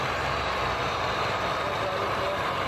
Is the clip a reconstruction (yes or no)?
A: yes